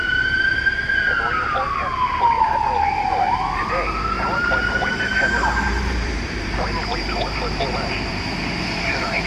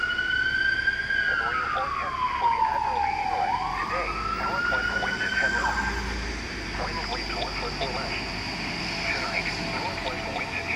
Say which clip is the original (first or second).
second